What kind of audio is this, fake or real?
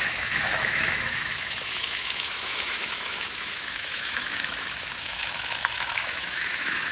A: fake